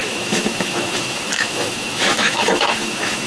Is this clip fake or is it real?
fake